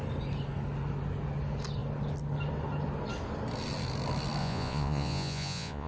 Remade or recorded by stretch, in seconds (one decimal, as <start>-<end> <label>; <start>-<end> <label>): 0.0-4.4 recorded; 4.4-5.9 remade